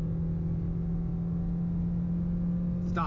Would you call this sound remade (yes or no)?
no